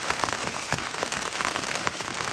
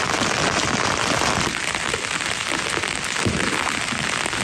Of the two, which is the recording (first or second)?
second